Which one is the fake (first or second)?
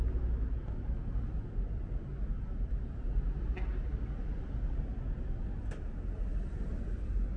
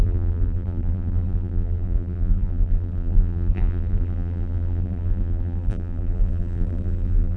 second